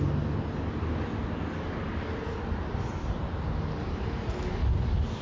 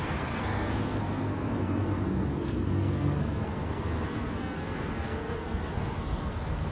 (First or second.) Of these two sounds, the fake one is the second